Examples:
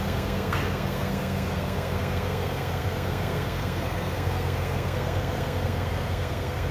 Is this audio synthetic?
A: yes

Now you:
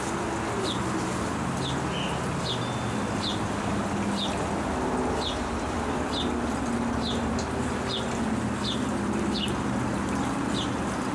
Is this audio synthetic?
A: no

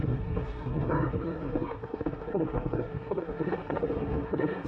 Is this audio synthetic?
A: yes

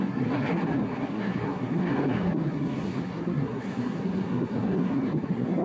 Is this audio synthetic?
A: yes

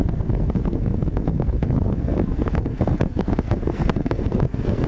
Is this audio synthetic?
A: yes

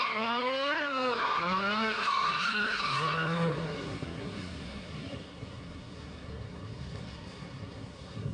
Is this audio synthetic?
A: yes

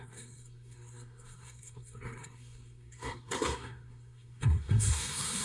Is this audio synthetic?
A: yes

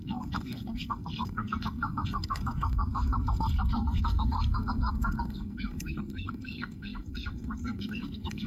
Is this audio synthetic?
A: yes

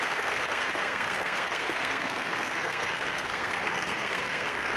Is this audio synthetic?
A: yes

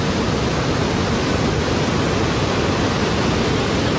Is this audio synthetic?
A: no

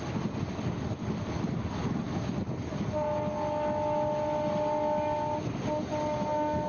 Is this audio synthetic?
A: no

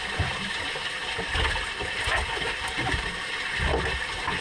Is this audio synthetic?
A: no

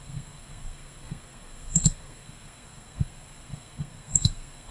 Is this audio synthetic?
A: yes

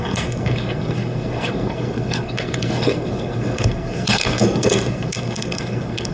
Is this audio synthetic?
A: yes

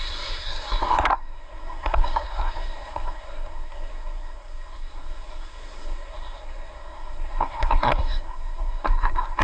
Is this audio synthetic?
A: yes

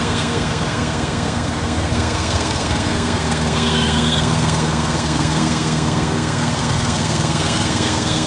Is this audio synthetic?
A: yes